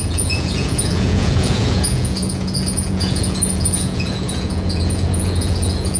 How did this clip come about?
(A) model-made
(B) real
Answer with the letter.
A